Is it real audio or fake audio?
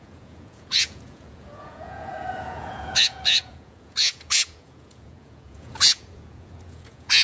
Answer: fake